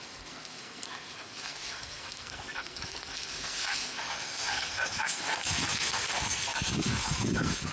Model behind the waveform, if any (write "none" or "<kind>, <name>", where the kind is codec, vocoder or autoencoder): codec, SNAC